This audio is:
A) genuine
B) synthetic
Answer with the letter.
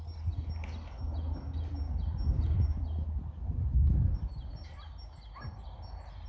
A